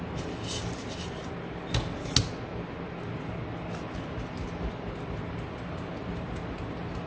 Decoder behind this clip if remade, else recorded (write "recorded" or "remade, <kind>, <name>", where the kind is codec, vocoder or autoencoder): recorded